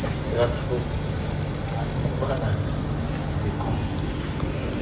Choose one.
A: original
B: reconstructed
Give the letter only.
A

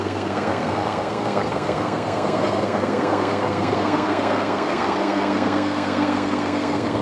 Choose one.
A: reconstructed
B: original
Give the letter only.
A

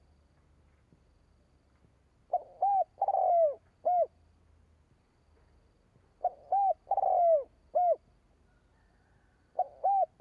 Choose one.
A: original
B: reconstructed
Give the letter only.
A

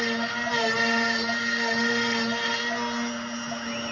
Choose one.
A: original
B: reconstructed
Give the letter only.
A